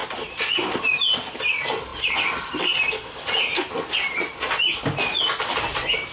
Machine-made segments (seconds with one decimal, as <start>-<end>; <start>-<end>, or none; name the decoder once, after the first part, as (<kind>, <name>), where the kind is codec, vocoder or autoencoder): none